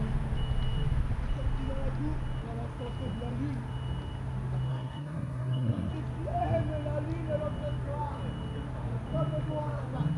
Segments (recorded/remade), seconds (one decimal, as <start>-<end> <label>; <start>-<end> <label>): 0.0-4.7 recorded; 4.7-5.9 remade; 5.9-10.2 recorded